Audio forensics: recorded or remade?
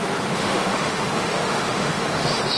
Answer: remade